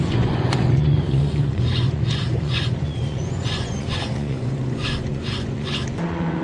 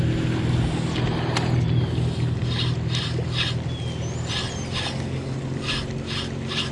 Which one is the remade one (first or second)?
first